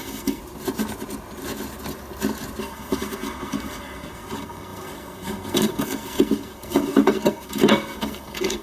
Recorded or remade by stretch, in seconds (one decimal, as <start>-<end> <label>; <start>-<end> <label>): 0.0-0.4 remade; 0.4-2.6 recorded; 2.6-8.6 remade